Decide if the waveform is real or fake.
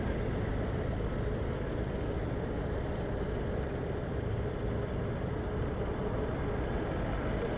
real